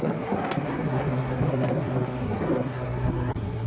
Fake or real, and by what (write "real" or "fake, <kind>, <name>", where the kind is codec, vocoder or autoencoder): fake, codec, SNAC